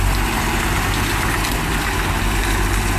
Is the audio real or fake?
real